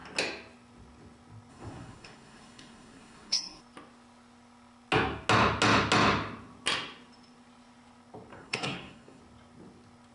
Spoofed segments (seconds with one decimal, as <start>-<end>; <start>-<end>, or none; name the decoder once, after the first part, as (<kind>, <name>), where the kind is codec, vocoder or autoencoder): 1.5-3.6 (codec, SNAC); 8.3-9.2